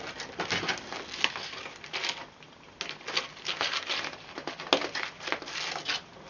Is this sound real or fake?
real